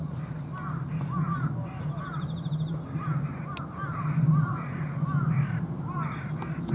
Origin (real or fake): real